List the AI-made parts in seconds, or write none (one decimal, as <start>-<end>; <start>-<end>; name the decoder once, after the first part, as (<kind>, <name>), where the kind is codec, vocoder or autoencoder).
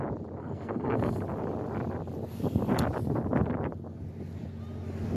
0.4-1.2 (codec, SNAC)